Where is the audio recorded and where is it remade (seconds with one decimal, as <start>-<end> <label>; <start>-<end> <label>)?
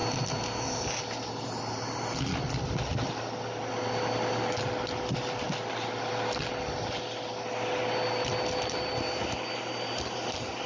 0.0-10.7 recorded